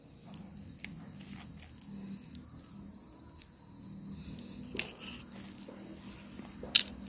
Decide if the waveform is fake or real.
real